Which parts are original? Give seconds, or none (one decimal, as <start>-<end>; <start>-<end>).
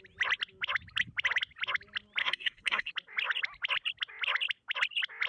0.0-2.2; 2.9-5.3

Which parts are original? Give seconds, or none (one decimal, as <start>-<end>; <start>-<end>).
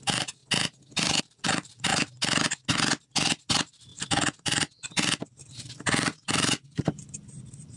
0.4-1.2; 1.9-3.5; 3.9-5.5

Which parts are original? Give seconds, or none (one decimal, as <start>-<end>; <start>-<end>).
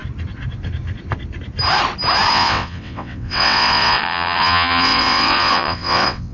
0.0-2.3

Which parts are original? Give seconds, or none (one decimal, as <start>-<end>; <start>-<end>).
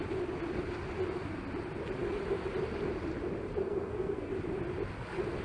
0.0-3.6; 4.3-5.4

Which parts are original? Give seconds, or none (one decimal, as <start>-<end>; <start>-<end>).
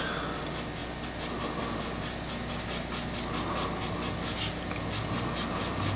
0.0-6.0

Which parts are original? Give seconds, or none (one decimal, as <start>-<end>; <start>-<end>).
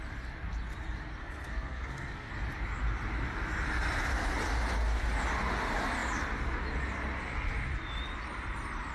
0.0-1.2; 2.3-8.9